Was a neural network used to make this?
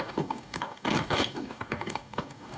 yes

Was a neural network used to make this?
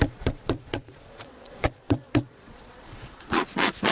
yes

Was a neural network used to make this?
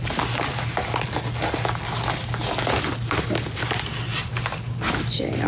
no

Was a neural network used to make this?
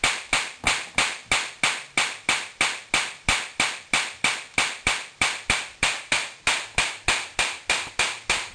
no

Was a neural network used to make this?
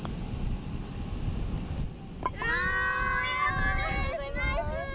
no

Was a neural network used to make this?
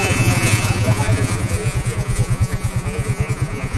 yes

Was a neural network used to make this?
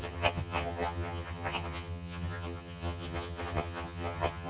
yes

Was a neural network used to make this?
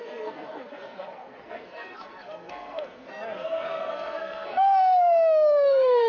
yes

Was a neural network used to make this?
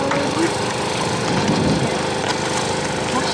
no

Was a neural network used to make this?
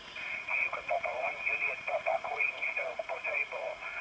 yes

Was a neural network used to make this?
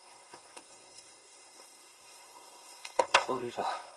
yes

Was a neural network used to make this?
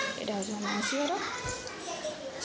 no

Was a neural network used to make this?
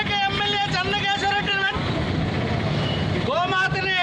no